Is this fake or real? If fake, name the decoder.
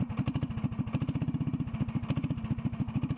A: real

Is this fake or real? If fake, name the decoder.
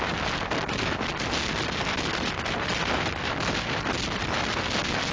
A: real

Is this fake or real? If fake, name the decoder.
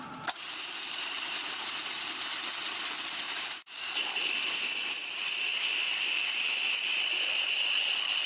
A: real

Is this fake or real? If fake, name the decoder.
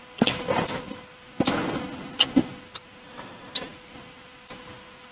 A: real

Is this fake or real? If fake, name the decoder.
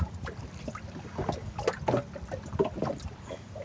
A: real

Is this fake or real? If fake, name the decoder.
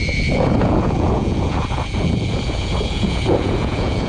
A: fake, vocoder, Vocos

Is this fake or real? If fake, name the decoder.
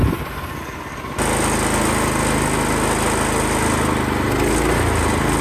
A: real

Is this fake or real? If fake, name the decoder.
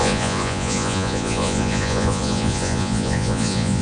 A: fake, vocoder, Vocos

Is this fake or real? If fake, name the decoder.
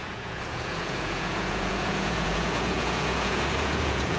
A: fake, vocoder, Vocos